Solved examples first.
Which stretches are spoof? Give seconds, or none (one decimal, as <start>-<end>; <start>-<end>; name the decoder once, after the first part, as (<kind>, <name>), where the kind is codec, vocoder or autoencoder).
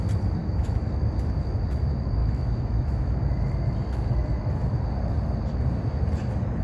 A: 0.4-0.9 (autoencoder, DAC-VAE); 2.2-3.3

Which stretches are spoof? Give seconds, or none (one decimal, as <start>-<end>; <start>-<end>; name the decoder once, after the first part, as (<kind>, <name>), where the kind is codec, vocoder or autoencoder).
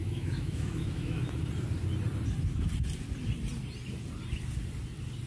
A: 0.0-1.5 (autoencoder, DAC-VAE)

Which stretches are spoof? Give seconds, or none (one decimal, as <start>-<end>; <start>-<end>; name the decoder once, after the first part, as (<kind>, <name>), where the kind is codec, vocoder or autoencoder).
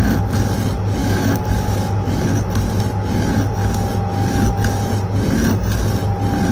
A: 1.0-2.2 (autoencoder, DAC-VAE)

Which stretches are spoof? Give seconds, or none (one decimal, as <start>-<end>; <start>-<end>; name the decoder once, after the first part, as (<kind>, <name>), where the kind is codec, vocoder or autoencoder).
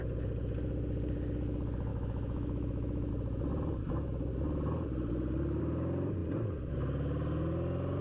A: 1.9-3.1 (autoencoder, DAC-VAE)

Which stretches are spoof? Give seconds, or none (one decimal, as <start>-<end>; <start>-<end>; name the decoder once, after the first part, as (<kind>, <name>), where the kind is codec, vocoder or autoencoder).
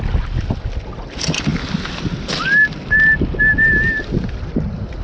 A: none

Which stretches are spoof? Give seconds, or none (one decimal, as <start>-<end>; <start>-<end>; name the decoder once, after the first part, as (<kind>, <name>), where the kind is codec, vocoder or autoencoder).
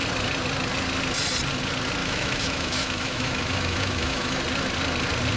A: 2.0-4.4 (autoencoder, DAC-VAE)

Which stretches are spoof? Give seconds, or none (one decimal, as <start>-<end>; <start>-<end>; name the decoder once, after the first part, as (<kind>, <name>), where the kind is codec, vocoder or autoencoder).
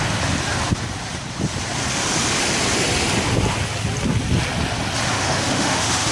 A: 5.1-6.1 (autoencoder, DAC-VAE)